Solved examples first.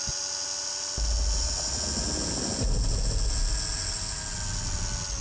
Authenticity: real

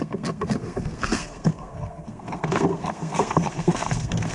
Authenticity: fake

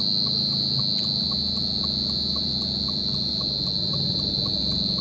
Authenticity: real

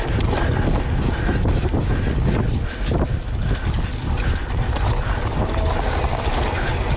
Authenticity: real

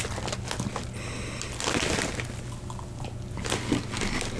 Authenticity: real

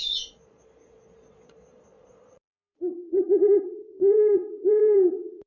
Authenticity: fake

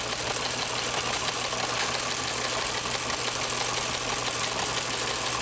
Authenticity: real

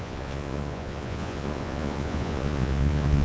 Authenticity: fake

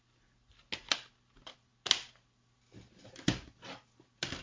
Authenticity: real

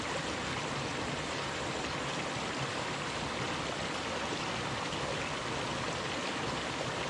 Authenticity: real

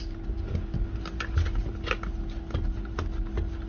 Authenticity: real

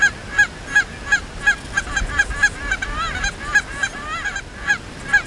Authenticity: real